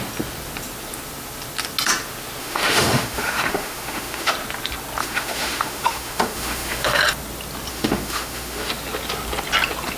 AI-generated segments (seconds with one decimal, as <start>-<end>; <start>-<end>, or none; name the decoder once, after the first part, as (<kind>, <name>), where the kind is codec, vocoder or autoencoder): 2.4-4.3 (autoencoder, DAC-VAE); 5.0-7.0; 7.7-8.7